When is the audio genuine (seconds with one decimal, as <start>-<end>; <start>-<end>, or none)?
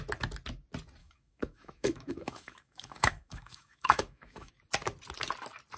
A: 0.0-1.0; 4.5-5.8